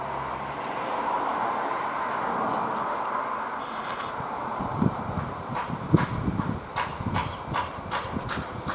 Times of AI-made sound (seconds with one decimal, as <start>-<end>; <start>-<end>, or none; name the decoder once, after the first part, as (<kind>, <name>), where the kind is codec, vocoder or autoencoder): 3.6-4.1 (codec, HILCodec)